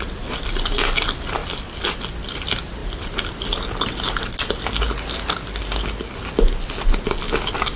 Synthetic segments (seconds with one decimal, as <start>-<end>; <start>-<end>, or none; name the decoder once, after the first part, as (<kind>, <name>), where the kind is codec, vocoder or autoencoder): none